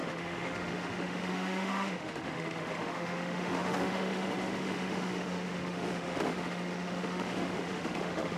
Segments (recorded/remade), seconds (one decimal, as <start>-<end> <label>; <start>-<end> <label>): 0.0-8.4 remade